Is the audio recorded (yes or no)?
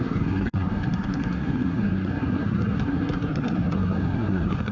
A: no